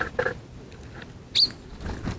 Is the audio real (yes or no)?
yes